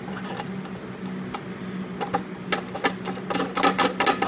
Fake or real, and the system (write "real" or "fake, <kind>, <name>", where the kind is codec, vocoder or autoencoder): real